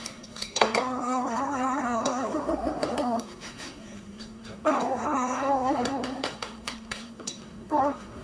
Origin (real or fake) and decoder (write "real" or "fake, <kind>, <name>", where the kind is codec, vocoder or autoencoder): fake, codec, SNAC